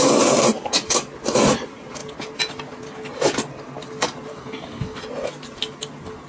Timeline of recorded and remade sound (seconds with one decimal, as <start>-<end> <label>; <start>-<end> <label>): 0.0-4.3 recorded; 4.3-5.0 remade; 5.0-6.3 recorded

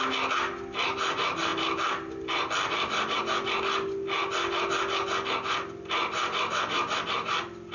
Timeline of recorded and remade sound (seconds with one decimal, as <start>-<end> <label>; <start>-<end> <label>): 0.0-7.7 recorded

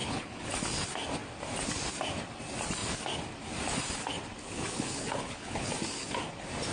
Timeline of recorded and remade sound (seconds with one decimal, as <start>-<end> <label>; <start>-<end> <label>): 0.0-0.5 remade; 0.5-4.4 recorded; 4.4-5.7 remade; 5.7-6.7 recorded

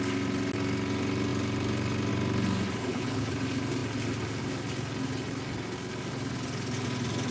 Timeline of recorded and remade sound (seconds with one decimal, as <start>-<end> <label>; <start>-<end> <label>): 0.0-2.8 recorded; 2.8-3.3 remade; 3.3-7.3 recorded

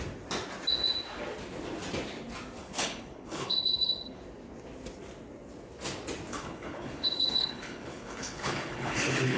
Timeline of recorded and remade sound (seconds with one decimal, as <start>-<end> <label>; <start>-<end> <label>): 0.0-2.6 recorded; 2.6-4.2 remade; 4.2-6.3 recorded; 6.3-9.4 remade

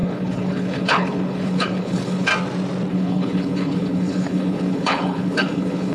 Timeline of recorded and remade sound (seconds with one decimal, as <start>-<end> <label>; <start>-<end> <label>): 0.0-2.3 remade; 2.3-2.9 recorded; 2.9-5.9 remade